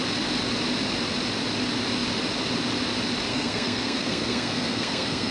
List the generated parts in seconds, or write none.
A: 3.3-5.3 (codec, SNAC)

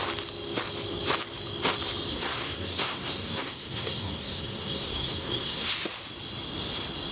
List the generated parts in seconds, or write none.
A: 2.1-5.7 (codec, SNAC)

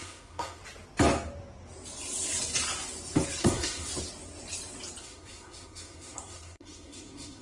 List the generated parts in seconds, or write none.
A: 0.0-0.6 (codec, SNAC); 3.4-3.9; 5.0-7.4

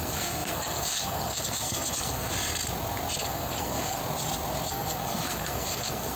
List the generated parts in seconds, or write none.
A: 0.0-2.3 (codec, SNAC); 3.2-4.0; 4.7-6.2

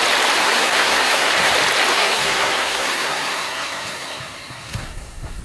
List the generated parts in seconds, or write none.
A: 0.4-1.5 (codec, SNAC); 1.9-5.4

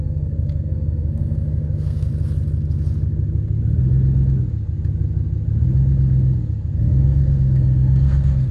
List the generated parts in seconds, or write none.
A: 0.0-2.1 (codec, SNAC); 6.8-8.5

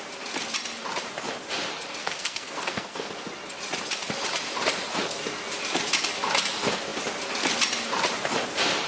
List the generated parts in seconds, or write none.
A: 2.0-3.1 (codec, SNAC)

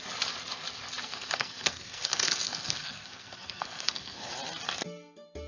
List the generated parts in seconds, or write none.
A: 1.0-4.3 (codec, SNAC)